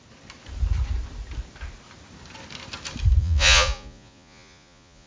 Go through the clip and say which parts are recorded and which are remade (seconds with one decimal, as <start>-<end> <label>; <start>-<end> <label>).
0.0-3.2 recorded; 3.2-5.1 remade